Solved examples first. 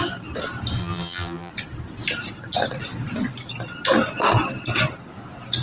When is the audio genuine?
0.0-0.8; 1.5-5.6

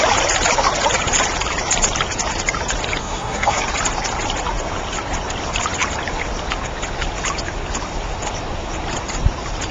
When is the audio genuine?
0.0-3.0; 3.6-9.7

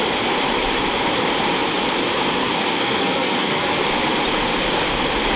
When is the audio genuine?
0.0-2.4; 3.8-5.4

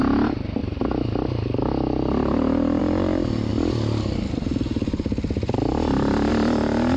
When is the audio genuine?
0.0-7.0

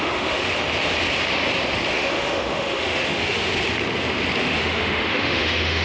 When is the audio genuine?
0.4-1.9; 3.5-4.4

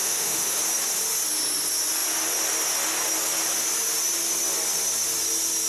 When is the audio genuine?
0.6-5.7

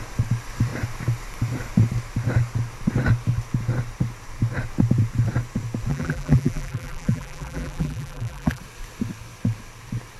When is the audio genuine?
0.0-5.9; 8.6-10.2

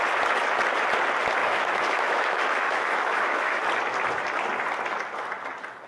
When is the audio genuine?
0.0-1.4; 3.6-5.9